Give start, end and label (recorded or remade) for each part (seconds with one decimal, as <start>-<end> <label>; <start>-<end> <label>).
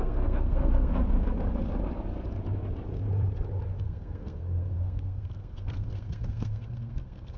0.0-0.9 remade; 0.9-3.8 recorded; 3.8-7.4 remade